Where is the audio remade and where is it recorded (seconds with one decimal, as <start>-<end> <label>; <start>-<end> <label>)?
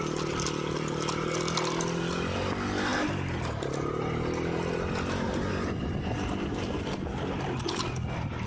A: 0.0-8.5 recorded